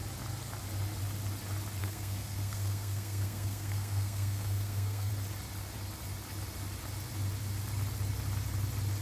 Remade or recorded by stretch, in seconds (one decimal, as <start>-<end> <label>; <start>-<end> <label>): 0.0-1.8 recorded; 1.8-5.1 remade; 5.1-9.0 recorded